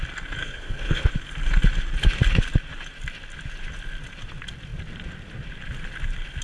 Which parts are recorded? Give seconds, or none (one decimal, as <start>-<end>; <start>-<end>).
0.0-0.4; 1.1-6.4